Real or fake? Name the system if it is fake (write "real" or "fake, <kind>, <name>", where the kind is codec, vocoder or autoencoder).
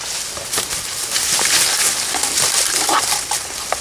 real